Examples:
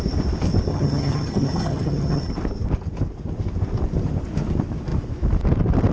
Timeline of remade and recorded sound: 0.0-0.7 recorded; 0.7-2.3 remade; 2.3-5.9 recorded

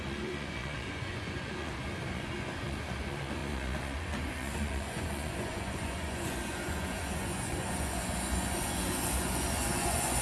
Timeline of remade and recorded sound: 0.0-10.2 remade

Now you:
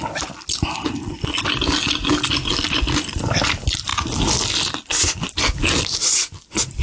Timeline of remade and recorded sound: 0.0-6.8 recorded

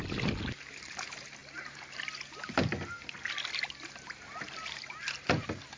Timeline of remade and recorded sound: 0.0-5.8 recorded